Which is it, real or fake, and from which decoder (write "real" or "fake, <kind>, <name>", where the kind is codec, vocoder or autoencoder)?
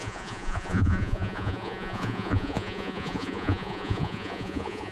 fake, vocoder, Vocos